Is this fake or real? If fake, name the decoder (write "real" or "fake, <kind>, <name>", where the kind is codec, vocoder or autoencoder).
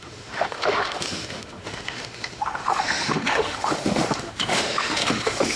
fake, autoencoder, DAC-VAE